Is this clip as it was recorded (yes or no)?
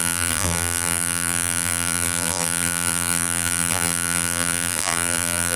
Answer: no